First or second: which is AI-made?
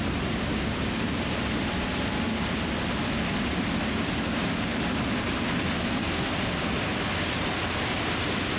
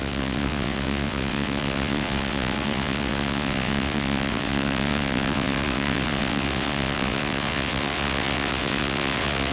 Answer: second